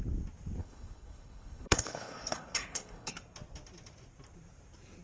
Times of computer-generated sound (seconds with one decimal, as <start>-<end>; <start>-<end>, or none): 0.6-3.1